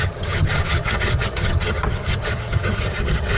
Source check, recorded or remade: remade